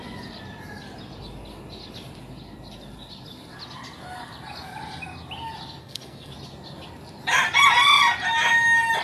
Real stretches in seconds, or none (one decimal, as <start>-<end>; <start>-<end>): 0.0-5.8; 6.3-9.0